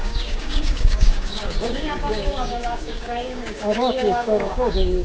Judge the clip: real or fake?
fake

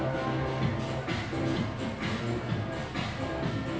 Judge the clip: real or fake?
real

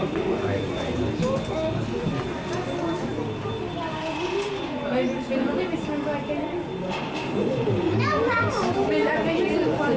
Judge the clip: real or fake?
real